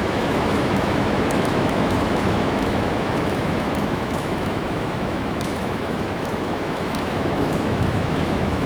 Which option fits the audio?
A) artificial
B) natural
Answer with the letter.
A